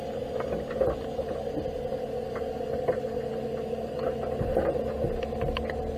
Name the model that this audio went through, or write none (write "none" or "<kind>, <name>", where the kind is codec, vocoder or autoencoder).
none